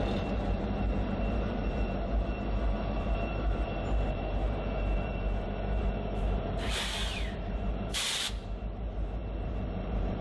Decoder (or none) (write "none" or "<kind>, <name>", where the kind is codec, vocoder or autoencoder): vocoder, BigVGAN v2